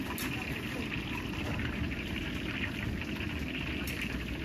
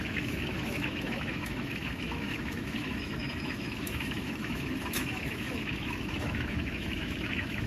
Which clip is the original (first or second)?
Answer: first